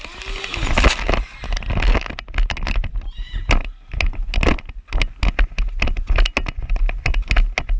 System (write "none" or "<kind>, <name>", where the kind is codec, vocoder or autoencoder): none